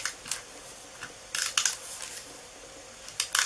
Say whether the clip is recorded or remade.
recorded